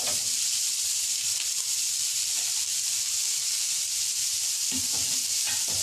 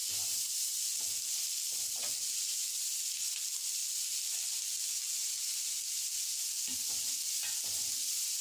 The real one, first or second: second